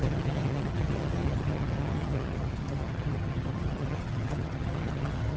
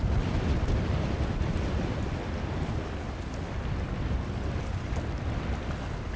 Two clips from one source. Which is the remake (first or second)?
first